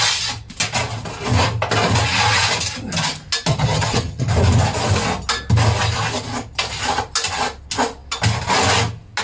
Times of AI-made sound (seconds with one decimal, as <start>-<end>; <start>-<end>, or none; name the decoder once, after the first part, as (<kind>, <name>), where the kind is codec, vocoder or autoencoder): 3.5-4.3 (vocoder, HiFi-GAN)